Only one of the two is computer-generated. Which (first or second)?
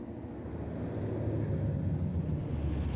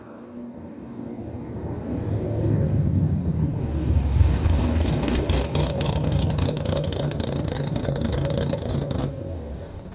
second